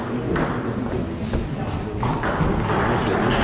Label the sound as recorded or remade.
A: recorded